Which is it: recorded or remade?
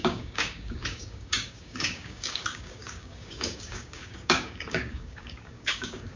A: remade